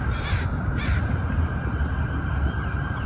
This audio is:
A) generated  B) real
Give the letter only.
A